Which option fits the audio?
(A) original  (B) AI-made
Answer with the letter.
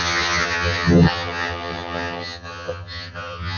B